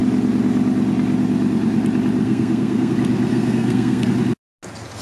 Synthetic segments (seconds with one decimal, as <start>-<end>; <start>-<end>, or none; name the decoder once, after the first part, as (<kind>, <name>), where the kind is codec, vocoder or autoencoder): 2.2-2.9 (codec, SNAC); 3.3-4.1